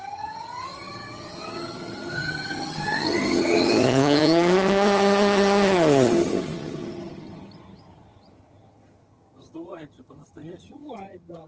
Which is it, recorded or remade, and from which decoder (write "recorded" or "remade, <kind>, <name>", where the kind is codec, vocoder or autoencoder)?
remade, vocoder, HiFi-GAN